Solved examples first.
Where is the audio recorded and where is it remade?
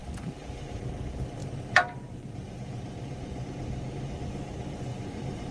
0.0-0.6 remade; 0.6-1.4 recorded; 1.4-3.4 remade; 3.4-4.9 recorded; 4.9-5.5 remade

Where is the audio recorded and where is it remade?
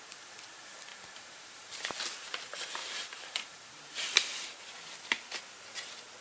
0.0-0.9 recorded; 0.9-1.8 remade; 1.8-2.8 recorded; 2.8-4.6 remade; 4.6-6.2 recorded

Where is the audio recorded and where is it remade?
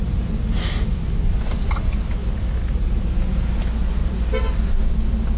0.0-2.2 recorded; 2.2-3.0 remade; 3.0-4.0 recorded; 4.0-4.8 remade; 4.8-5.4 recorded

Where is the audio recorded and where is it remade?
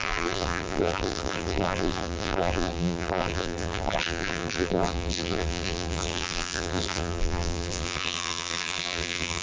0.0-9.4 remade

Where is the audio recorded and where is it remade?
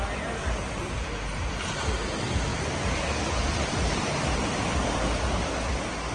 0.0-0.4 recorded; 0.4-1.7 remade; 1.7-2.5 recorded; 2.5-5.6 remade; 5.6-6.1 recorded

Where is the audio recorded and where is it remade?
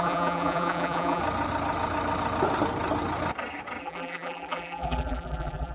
0.0-1.2 remade; 1.2-3.8 recorded; 3.8-5.7 remade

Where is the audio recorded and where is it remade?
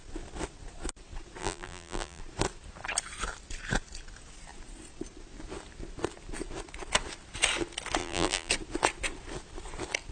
0.0-1.4 recorded; 1.4-2.2 remade; 2.2-8.0 recorded; 8.0-8.5 remade; 8.5-10.1 recorded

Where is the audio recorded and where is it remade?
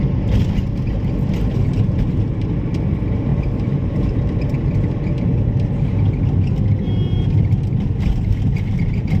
0.0-3.3 recorded; 3.3-4.6 remade; 4.6-9.2 recorded